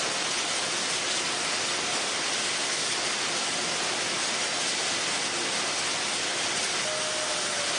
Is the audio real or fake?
real